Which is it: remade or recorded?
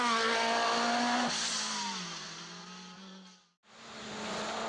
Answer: recorded